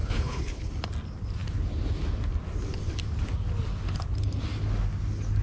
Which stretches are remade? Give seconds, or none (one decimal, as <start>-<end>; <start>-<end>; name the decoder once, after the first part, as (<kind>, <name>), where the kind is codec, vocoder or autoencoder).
0.0-0.7 (codec, HILCodec)

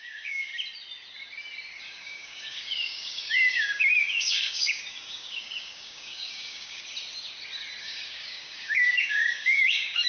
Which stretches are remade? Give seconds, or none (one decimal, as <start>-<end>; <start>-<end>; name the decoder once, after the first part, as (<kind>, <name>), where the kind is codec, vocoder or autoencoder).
0.0-0.5 (codec, DAC); 1.8-6.8; 7.8-10.1

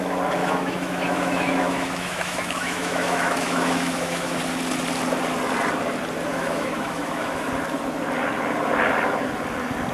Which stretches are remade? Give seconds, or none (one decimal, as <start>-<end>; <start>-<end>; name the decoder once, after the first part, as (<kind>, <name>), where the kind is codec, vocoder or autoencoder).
0.4-4.4 (autoencoder, DAC-VAE); 6.3-7.5

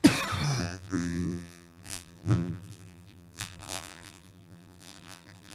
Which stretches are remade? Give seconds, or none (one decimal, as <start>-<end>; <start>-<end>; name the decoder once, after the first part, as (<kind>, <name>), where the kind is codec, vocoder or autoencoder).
0.6-5.5 (vocoder, BigVGAN v2)

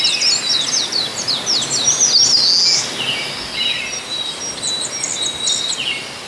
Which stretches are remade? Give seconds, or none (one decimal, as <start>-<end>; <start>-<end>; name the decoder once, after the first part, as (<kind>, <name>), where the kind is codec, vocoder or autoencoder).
none

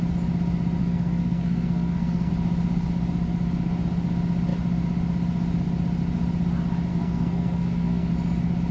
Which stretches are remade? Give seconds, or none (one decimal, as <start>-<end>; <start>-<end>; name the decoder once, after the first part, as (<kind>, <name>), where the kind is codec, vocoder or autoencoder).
0.8-2.3 (codec, SNAC); 6.9-8.1

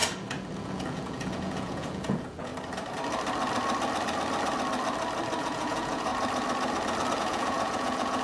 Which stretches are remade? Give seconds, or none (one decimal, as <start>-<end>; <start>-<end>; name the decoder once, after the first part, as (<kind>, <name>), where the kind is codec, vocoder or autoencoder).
0.6-2.5 (vocoder, Vocos); 5.4-6.1; 7.2-8.2